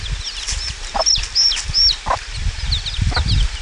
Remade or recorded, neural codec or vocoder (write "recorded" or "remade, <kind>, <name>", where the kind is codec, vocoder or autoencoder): recorded